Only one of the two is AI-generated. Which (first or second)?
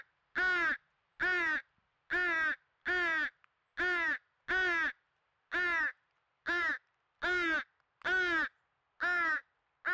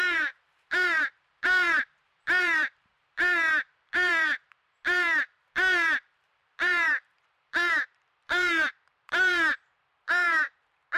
second